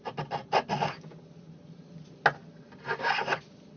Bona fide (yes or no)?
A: yes